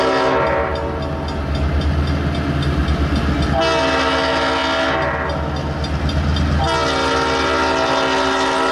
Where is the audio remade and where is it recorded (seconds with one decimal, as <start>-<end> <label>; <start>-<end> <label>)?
0.0-8.7 recorded